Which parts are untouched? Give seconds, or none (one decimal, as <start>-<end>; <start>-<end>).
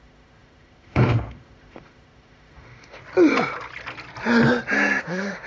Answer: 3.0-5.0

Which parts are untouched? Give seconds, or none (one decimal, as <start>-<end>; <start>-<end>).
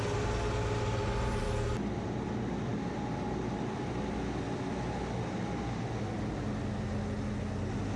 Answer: 0.0-8.0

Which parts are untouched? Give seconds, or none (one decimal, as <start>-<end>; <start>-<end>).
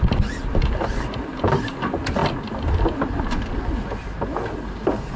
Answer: 0.0-5.2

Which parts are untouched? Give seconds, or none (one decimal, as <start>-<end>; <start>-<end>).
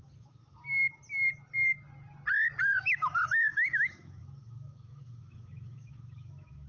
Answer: 0.8-2.6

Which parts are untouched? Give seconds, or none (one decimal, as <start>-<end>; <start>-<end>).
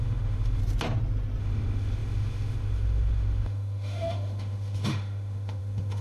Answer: 0.6-1.4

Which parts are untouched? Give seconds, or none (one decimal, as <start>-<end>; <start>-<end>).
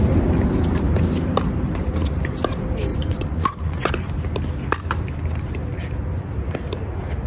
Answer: 0.0-2.9; 3.9-7.3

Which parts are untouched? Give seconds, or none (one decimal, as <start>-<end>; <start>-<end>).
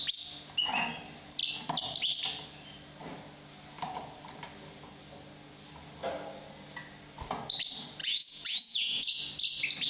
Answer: 0.0-8.0; 9.2-9.9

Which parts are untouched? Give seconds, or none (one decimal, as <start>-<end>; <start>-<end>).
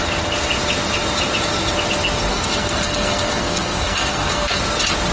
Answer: 0.0-2.3; 4.6-5.1